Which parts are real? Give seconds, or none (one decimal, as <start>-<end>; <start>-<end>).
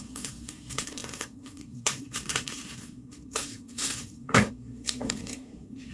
none